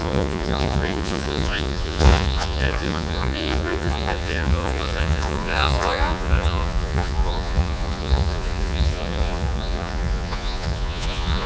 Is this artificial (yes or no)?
yes